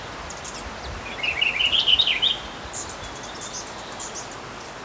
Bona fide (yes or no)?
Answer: yes